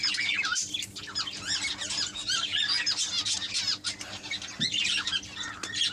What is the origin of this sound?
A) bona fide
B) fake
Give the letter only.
A